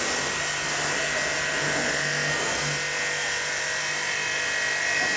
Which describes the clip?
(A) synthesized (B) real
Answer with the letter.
B